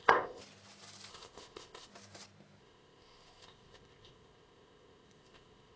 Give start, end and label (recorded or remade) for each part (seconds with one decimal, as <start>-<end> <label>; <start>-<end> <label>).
0.0-0.4 remade; 0.4-1.1 recorded; 1.1-1.9 remade; 1.9-2.6 recorded; 2.6-5.8 remade